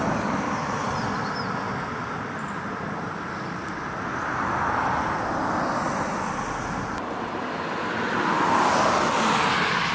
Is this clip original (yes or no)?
yes